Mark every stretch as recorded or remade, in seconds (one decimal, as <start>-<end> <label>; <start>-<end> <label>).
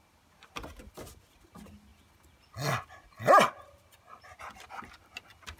0.0-5.6 recorded